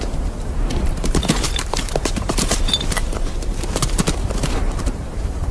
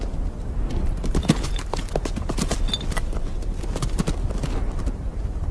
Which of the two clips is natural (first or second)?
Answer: second